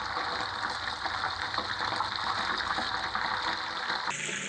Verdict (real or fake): real